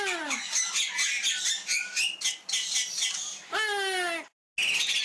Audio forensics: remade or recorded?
recorded